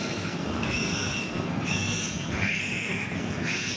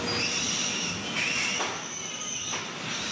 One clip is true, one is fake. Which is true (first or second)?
second